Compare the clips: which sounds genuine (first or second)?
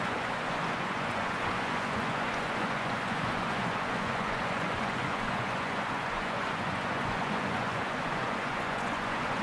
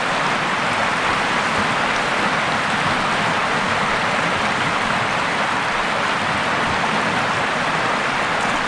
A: second